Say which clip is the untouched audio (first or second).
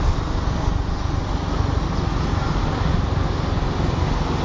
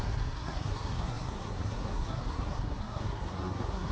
first